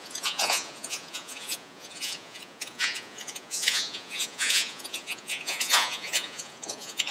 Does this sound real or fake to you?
fake